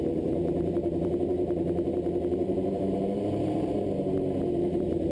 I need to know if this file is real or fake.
fake